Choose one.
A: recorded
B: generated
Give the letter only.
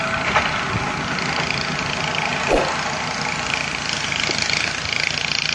A